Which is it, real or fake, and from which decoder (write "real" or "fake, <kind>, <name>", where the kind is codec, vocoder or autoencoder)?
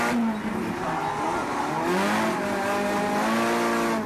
real